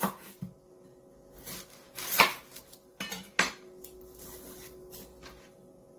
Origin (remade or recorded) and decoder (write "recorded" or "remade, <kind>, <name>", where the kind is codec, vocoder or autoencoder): recorded